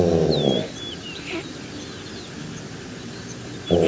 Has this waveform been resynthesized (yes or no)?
no